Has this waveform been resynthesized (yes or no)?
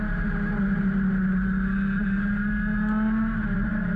no